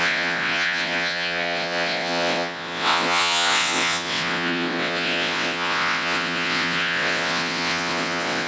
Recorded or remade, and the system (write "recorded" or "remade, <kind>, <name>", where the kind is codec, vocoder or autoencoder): remade, vocoder, WaveNeXt